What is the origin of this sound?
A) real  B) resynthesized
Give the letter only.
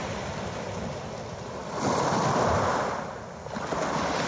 A